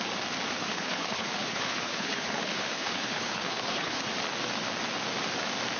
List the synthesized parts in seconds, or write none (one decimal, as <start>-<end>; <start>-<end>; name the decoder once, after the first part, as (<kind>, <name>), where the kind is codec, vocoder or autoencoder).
0.6-4.1 (codec, HILCodec)